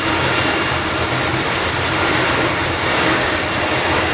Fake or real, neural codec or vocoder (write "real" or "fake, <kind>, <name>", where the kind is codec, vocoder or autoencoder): real